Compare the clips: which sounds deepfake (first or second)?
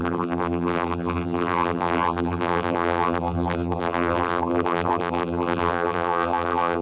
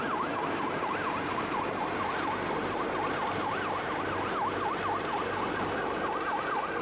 first